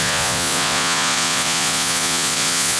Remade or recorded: remade